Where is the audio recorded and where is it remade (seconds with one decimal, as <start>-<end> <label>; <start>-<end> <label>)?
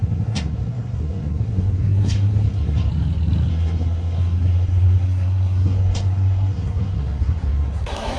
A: 0.0-2.9 remade; 2.9-3.5 recorded; 3.5-8.2 remade